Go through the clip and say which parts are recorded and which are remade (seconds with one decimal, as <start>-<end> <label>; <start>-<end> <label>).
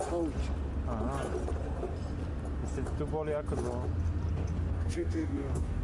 0.0-4.7 recorded; 4.7-5.8 remade